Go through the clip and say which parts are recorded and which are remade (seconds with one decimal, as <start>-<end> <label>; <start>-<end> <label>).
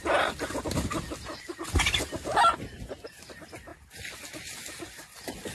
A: 0.0-0.9 remade; 0.9-5.5 recorded